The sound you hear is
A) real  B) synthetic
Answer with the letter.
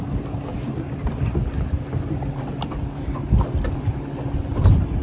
A